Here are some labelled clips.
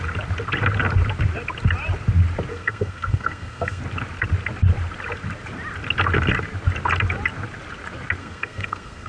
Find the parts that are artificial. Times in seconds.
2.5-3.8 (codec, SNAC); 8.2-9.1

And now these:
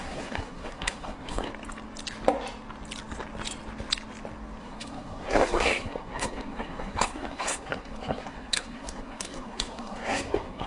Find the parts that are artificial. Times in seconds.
0.0-1.5 (codec, SNAC); 4.6-10.7

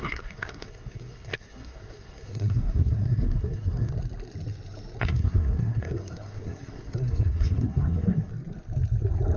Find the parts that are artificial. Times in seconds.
0.0-3.9 (codec, SNAC); 5.0-8.3

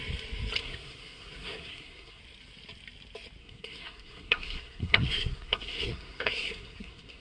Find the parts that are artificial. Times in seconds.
0.6-2.2 (codec, SNAC); 3.4-7.2

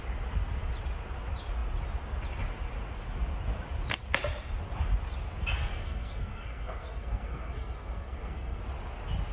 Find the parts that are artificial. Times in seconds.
5.7-8.6 (codec, SNAC)

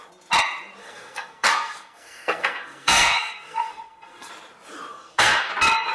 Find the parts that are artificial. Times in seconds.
0.8-4.3 (codec, SNAC); 4.9-5.5

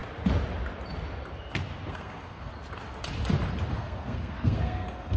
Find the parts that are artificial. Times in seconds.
1.9-2.5 (codec, SNAC); 3.7-5.2